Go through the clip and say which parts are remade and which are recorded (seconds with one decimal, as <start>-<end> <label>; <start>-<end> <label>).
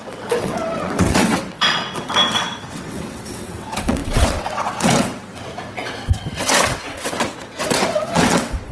0.0-8.7 remade